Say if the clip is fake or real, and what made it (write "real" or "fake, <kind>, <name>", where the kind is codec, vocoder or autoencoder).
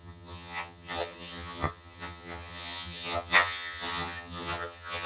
fake, vocoder, HiFi-GAN